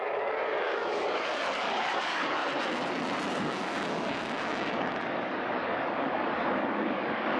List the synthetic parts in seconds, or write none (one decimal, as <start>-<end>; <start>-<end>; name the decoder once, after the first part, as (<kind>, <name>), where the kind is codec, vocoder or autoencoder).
0.0-2.4 (codec, DAC); 3.3-7.4